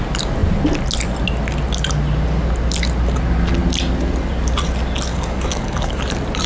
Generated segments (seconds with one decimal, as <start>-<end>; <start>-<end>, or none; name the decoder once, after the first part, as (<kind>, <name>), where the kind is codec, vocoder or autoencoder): 5.1-6.0 (codec, DAC)